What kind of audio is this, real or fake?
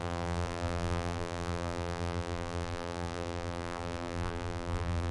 fake